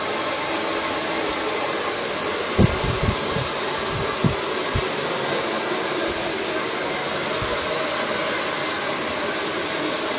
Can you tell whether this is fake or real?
real